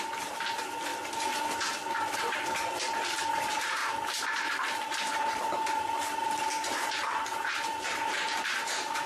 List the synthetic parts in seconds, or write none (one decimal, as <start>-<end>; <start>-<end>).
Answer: 0.0-0.9; 2.2-9.1